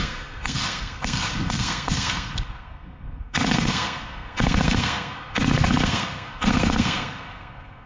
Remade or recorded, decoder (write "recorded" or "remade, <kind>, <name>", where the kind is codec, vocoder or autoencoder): remade, codec, SNAC